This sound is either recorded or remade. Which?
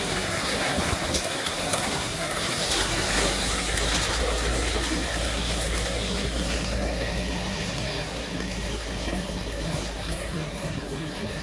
remade